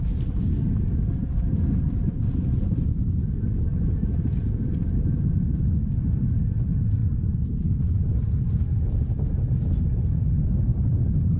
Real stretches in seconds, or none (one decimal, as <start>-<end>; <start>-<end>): 0.0-11.4

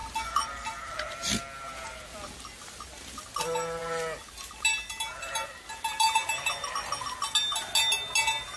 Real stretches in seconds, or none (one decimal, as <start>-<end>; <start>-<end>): 0.0-8.6